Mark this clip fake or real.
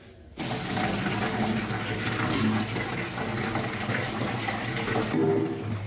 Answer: real